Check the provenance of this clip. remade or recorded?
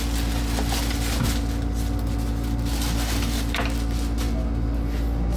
recorded